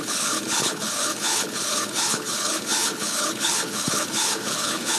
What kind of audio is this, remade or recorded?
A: remade